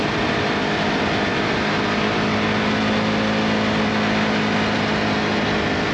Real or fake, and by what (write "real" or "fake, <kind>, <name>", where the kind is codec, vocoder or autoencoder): real